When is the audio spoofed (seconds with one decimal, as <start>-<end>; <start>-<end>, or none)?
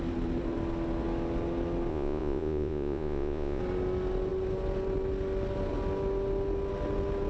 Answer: 1.9-3.6